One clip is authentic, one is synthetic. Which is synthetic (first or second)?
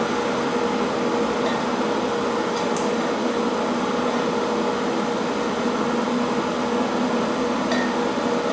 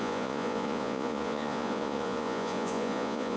second